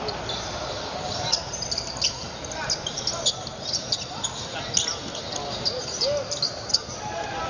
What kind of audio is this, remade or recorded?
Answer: recorded